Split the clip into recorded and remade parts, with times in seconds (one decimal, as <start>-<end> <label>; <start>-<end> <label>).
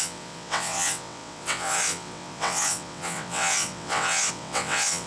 0.0-5.1 remade